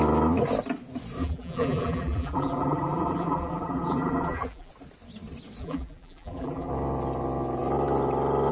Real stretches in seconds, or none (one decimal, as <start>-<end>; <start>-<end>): 0.0-1.2; 4.7-5.6; 6.7-8.5